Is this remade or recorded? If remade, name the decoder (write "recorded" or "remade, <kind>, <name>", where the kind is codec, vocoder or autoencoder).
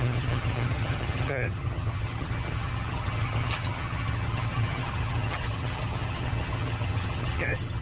remade, vocoder, HiFi-GAN